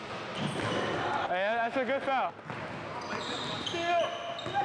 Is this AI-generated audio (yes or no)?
no